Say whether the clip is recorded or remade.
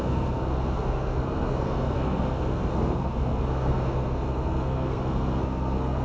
remade